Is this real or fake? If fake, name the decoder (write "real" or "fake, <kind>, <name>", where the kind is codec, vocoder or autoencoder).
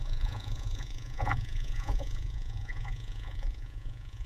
fake, vocoder, Vocos